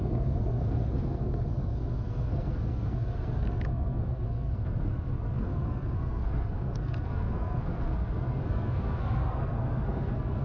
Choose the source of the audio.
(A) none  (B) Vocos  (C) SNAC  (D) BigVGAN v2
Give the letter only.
C